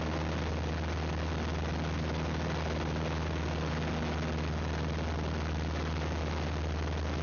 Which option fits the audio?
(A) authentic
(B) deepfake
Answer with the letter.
A